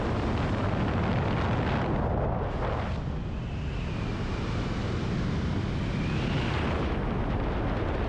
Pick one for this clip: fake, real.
real